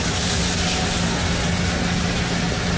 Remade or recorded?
recorded